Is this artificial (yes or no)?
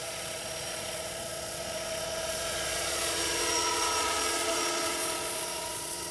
yes